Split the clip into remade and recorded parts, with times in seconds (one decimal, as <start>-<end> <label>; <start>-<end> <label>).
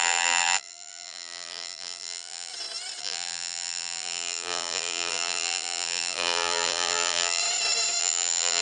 0.0-2.5 remade; 2.5-3.0 recorded; 3.0-7.4 remade; 7.4-8.0 recorded; 8.0-8.6 remade